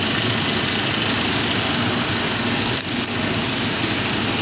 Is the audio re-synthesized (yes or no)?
no